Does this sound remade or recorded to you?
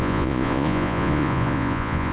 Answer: remade